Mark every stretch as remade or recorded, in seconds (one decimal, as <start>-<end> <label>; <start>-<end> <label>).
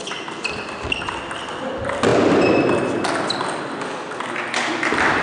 0.0-5.2 recorded